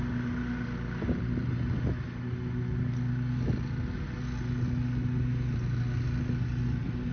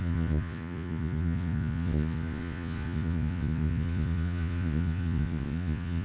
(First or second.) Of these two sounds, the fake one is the second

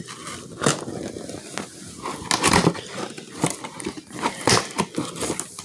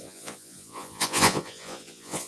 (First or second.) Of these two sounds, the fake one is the second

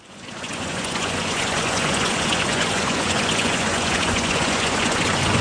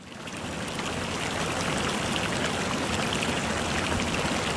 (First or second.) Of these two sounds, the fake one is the first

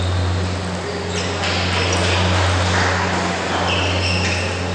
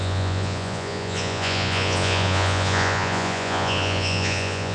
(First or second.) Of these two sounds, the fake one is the second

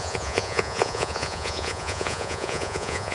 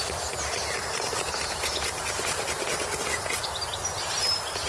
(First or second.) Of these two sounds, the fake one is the first